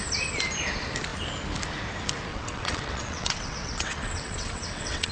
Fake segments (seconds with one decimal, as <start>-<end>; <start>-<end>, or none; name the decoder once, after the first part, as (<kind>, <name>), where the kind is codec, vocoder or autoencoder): 2.3-5.1 (vocoder, WaveNeXt)